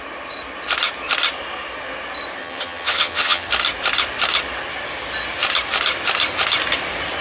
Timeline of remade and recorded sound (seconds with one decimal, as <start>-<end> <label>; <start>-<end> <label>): 0.0-2.4 recorded; 2.4-3.5 remade; 3.5-7.2 recorded